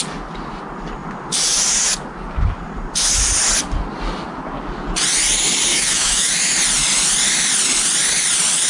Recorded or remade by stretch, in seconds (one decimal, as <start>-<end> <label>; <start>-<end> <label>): 0.0-5.7 recorded; 5.7-6.3 remade; 6.3-8.7 recorded